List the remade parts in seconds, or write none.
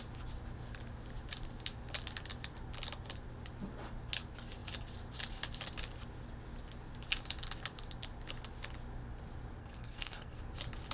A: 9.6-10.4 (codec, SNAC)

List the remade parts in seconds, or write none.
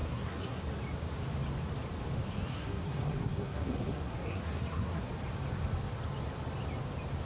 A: 0.0-0.6 (codec, SNAC); 2.5-5.1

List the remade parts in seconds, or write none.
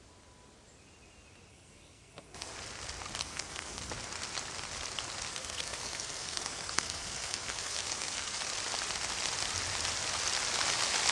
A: 1.5-2.5 (codec, SNAC); 3.2-3.9; 5.3-8.4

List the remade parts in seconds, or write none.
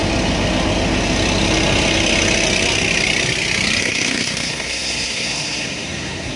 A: 3.8-6.4 (codec, SNAC)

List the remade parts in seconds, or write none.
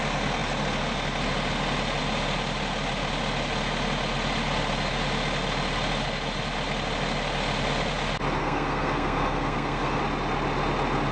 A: 8.4-10.0 (codec, SNAC)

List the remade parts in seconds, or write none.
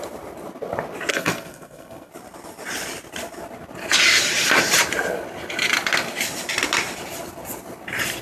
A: 1.1-2.1 (codec, SNAC)